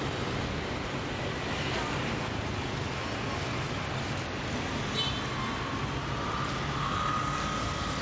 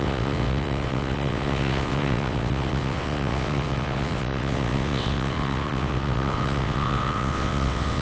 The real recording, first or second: first